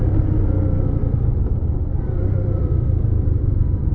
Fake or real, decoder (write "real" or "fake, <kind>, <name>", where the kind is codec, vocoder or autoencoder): fake, vocoder, BigVGAN v2